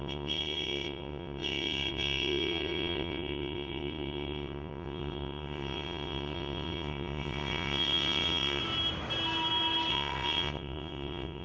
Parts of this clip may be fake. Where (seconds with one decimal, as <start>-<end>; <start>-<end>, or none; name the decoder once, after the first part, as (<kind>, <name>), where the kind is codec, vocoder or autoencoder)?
0.0-8.6 (vocoder, WaveNeXt); 9.9-11.4